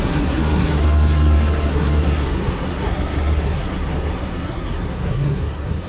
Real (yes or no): no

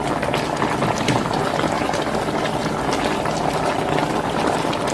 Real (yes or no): yes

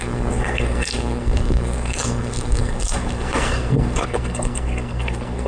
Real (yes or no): no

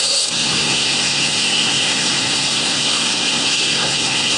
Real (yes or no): no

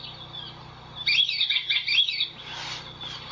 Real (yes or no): yes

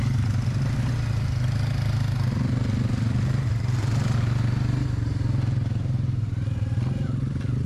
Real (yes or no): yes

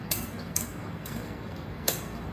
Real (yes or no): no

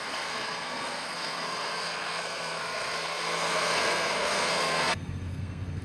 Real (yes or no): no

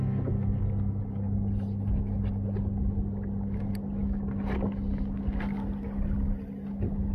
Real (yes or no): yes